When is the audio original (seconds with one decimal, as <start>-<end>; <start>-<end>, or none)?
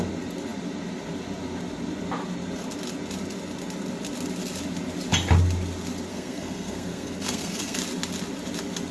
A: 0.0-6.1; 7.8-8.9